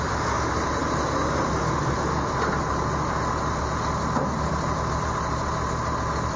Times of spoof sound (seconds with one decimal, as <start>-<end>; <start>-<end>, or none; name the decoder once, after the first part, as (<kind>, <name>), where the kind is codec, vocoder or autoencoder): none